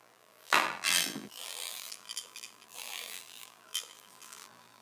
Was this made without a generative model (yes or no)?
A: no